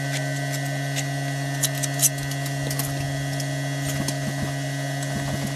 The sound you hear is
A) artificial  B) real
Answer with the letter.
B